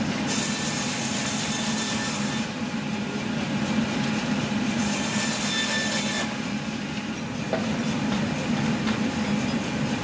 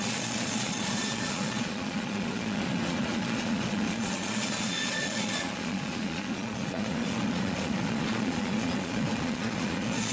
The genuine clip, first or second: first